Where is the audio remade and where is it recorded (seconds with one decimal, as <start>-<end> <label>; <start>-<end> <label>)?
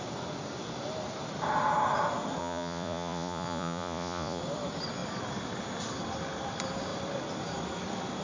0.0-2.4 recorded; 2.4-4.4 remade; 4.4-8.2 recorded